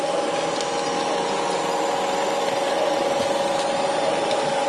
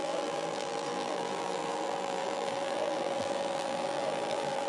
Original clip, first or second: first